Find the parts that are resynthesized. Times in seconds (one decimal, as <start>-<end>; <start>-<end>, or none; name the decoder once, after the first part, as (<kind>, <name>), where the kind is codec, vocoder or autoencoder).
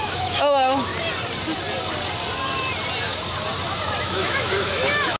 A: 0.0-0.9 (autoencoder, DAC-VAE); 4.0-5.2